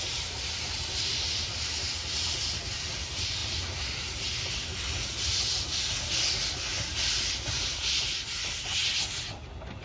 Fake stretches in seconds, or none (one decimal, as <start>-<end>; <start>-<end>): none